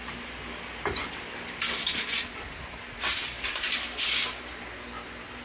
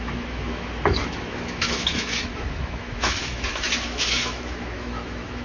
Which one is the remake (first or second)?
second